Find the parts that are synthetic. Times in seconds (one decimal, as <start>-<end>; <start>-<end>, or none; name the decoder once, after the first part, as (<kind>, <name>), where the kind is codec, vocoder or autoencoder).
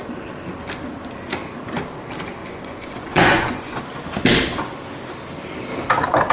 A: 2.4-3.8 (vocoder, Vocos)